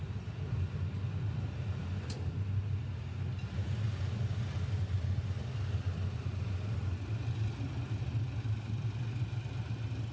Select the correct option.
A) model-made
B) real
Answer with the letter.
B